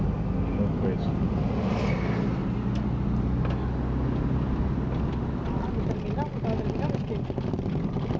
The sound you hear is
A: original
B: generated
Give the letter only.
A